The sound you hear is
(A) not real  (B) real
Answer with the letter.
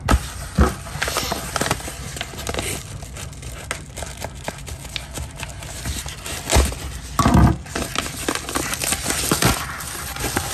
B